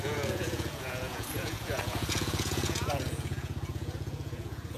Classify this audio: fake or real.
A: fake